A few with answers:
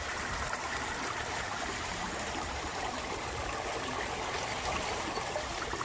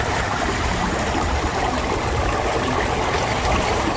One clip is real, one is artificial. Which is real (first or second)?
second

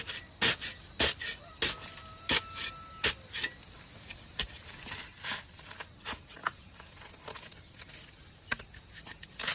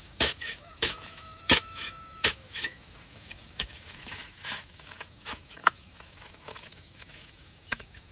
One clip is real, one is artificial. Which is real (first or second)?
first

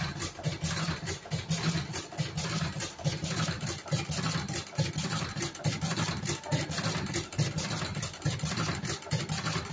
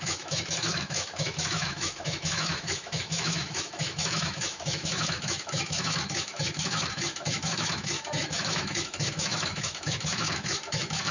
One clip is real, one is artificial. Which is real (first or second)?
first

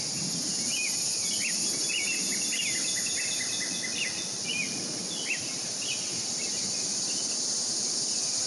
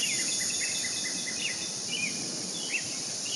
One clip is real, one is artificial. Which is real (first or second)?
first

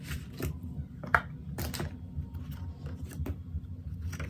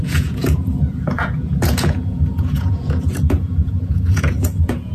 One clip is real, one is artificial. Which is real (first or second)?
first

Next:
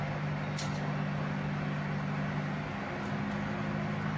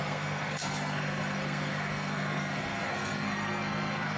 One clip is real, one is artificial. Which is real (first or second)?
first